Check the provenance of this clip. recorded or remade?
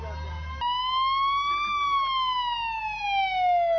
recorded